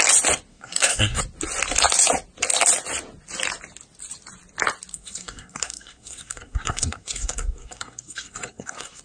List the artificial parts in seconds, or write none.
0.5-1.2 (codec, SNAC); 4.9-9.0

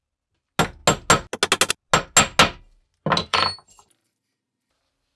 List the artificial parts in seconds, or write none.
3.2-4.8 (vocoder, BigVGAN v2)

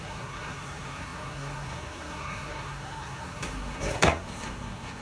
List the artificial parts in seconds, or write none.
0.0-5.0 (codec, SNAC)

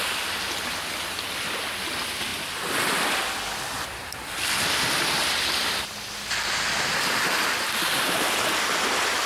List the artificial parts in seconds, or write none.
none

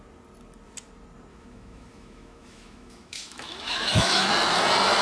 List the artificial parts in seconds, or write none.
1.3-4.3 (autoencoder, DAC-VAE)